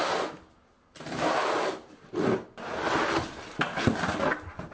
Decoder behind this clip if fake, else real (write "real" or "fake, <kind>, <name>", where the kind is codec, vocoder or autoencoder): real